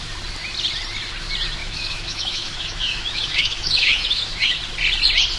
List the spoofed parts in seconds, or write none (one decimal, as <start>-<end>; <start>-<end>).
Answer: 1.6-4.6